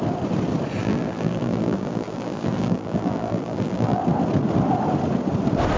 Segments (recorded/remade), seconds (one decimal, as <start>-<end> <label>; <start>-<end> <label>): 0.0-0.8 recorded; 0.8-4.0 remade; 4.0-5.8 recorded